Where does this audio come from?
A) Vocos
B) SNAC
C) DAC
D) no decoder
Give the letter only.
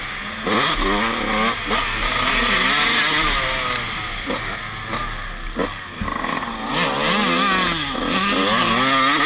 D